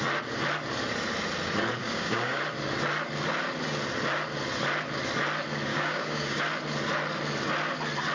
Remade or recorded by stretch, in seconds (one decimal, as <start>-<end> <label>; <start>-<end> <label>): 0.0-1.8 recorded; 1.8-2.4 remade; 2.4-5.7 recorded; 5.7-6.4 remade; 6.4-8.1 recorded